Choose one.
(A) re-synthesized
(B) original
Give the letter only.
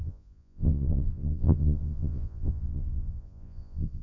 A